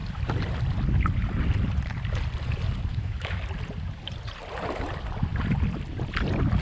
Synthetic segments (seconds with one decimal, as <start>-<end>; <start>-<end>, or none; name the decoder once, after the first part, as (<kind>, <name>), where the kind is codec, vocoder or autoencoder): 2.9-3.4 (autoencoder, DAC-VAE)